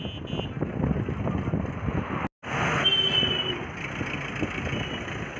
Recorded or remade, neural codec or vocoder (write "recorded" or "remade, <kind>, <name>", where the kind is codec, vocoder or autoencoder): recorded